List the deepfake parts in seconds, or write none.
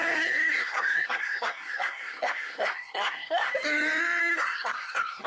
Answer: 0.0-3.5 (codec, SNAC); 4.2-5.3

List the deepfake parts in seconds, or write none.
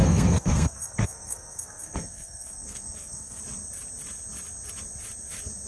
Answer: 0.0-3.4 (codec, SNAC)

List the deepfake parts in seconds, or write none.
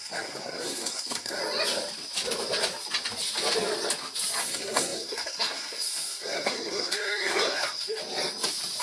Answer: 0.0-1.4 (codec, SNAC); 4.4-8.0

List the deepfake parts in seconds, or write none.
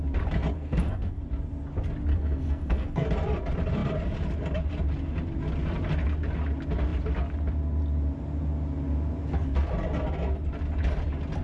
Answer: 0.5-1.2 (codec, SNAC); 2.1-3.1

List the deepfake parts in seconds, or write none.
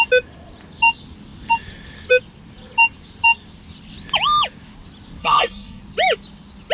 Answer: 5.2-5.8 (codec, SNAC)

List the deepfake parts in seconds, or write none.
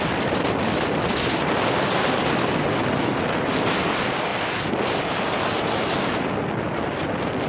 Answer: none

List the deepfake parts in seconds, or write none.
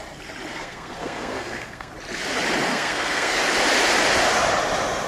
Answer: 0.5-1.9 (codec, SNAC); 2.7-3.4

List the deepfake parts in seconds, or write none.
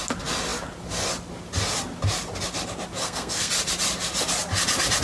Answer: 3.0-3.5 (codec, SNAC)